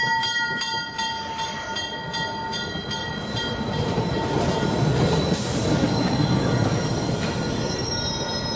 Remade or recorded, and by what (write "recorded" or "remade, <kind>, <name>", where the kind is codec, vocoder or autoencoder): recorded